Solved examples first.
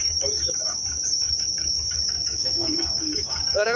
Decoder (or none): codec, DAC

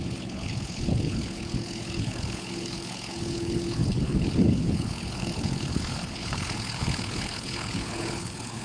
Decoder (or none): codec, HILCodec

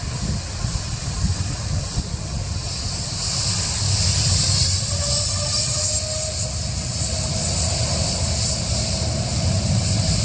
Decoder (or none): none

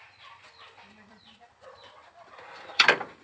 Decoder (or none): vocoder, BigVGAN v2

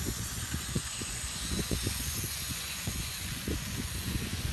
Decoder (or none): vocoder, Vocos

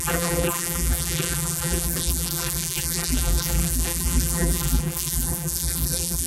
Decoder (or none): vocoder, BigVGAN v2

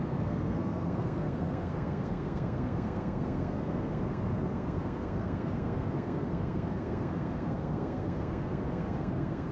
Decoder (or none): codec, SNAC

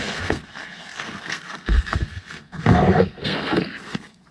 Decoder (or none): codec, SNAC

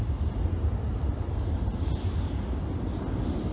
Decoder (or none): none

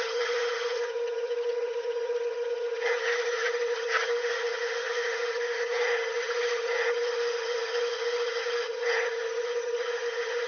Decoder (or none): vocoder, HiFi-GAN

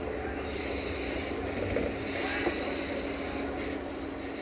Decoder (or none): none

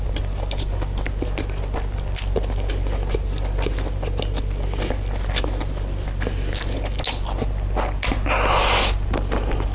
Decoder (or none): none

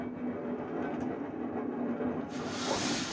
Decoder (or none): none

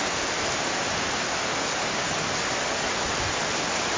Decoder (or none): none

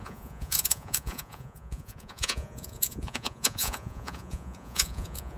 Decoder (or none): vocoder, Vocos